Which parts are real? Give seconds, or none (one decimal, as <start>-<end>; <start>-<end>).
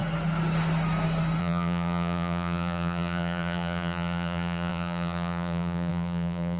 0.0-1.4